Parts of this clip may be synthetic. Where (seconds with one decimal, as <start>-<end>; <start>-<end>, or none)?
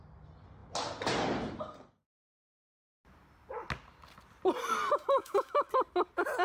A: 5.2-5.7